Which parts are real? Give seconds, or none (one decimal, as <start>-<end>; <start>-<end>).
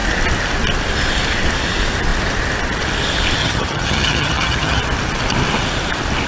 0.0-3.4; 4.8-6.3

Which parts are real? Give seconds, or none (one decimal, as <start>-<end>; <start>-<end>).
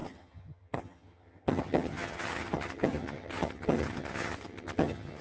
none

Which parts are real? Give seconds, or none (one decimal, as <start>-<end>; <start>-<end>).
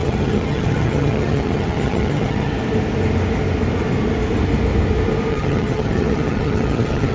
2.5-5.3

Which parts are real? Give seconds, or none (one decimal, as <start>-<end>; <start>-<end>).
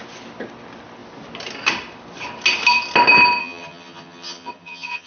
0.0-3.4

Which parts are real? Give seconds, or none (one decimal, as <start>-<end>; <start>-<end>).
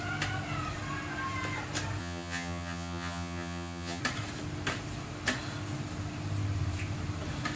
0.0-2.0; 4.0-7.6